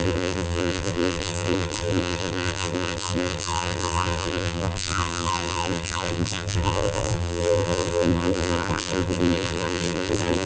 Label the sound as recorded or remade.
remade